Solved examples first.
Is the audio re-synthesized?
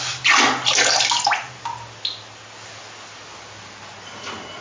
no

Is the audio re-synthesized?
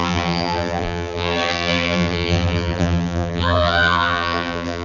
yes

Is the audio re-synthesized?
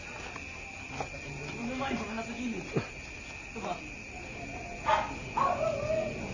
no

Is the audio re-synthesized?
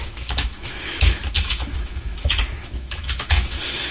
yes